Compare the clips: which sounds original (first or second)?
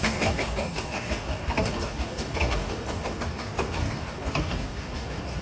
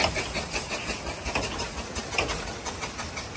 second